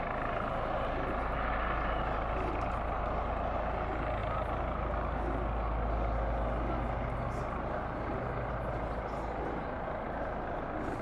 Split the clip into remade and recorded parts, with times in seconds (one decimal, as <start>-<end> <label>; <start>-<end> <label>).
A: 0.0-11.0 recorded